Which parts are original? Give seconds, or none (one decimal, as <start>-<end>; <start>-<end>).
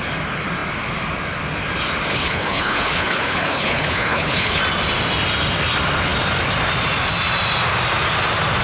0.0-2.1; 4.6-8.6